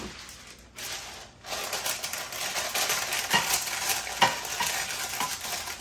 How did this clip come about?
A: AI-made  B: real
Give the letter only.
B